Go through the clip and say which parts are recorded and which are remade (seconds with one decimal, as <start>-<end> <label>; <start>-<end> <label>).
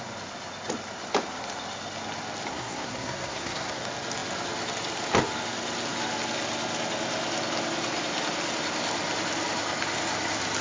0.0-2.5 recorded; 2.5-3.8 remade; 3.8-10.6 recorded